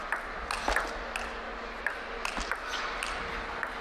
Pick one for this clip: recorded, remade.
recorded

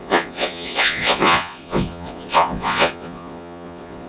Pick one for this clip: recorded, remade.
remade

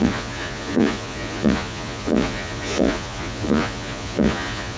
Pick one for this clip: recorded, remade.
remade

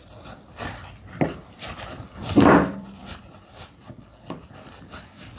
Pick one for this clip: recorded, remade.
recorded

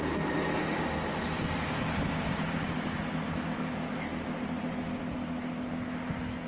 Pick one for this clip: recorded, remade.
recorded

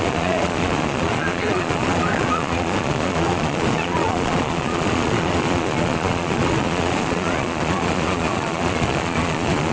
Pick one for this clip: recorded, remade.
remade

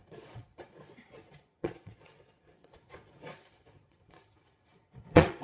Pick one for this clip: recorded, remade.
remade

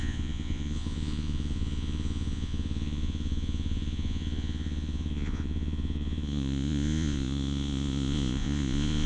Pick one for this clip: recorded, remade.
remade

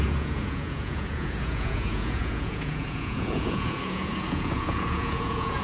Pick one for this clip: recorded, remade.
remade